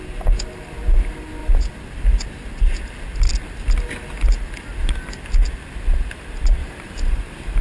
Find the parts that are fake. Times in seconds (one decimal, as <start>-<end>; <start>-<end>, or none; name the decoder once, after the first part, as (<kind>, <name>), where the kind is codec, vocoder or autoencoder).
6.6-7.6 (vocoder, BigVGAN v2)